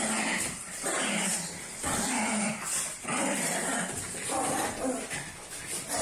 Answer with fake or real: fake